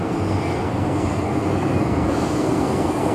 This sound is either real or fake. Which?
fake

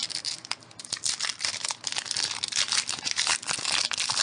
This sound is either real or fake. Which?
real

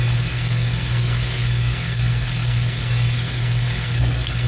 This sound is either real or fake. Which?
fake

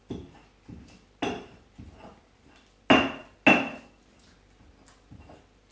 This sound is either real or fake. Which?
real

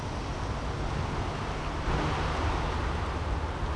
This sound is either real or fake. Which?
real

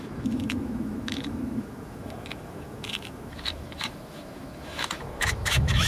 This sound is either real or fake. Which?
fake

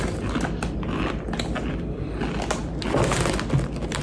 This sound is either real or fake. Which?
real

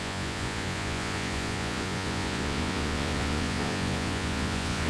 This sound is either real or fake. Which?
fake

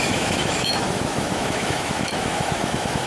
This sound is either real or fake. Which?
fake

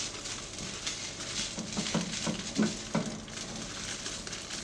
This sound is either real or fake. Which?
real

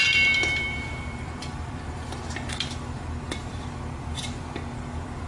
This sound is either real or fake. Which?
fake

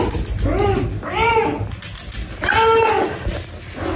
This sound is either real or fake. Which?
real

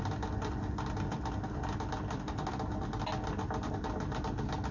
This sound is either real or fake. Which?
real